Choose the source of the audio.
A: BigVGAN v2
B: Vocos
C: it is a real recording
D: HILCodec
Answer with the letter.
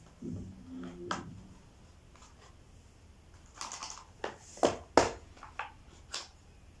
C